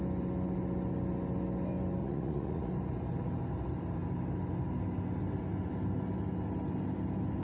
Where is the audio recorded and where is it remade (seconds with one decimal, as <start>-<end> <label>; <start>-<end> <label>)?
0.0-2.0 recorded; 2.0-2.7 remade; 2.7-7.4 recorded